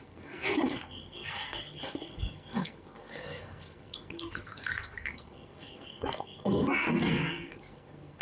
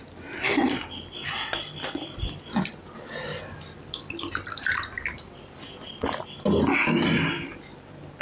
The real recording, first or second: second